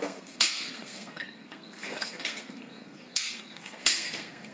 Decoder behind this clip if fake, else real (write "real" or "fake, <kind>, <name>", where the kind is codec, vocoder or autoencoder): fake, codec, SNAC